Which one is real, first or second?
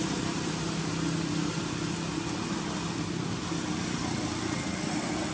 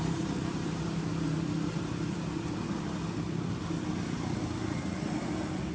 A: first